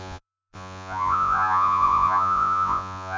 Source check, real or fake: fake